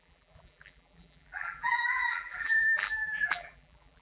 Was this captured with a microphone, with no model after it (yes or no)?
no